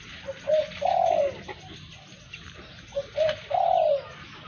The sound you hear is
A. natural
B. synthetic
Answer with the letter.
A